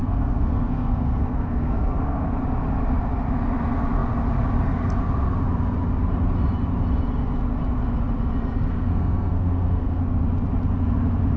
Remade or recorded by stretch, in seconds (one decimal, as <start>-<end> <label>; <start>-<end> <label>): 0.0-2.3 remade; 2.3-8.7 recorded; 8.7-10.0 remade; 10.0-11.4 recorded